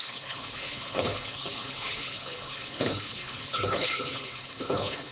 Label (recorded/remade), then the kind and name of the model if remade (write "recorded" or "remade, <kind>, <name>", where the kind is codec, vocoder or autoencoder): remade, codec, HILCodec